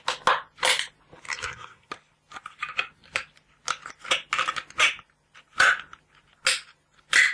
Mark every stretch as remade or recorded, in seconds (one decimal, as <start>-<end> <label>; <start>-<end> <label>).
0.0-1.3 recorded; 1.3-1.9 remade; 1.9-7.3 recorded